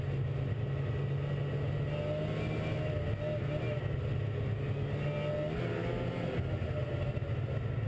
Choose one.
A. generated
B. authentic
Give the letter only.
B